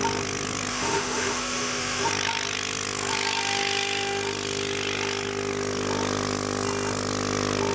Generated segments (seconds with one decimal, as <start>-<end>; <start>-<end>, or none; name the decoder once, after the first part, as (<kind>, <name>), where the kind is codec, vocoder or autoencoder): 0.7-2.1 (autoencoder, DAC-VAE)